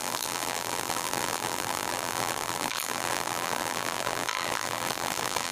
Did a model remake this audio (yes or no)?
yes